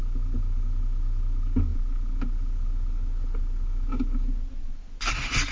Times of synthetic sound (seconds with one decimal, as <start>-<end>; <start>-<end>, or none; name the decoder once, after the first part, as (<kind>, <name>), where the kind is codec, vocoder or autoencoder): none

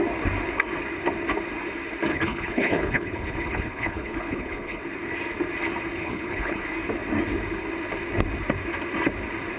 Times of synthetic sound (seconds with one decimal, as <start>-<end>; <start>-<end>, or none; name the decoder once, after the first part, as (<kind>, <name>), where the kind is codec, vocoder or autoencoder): 2.1-4.8 (codec, HILCodec); 6.0-6.6

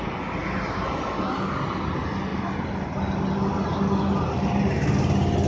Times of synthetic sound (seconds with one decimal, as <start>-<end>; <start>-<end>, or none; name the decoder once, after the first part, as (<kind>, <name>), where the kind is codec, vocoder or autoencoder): none

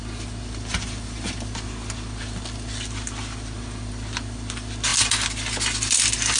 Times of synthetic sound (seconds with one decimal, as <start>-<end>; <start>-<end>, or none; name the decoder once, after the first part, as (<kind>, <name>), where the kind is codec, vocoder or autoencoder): none